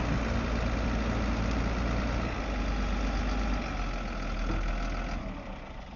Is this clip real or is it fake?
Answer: real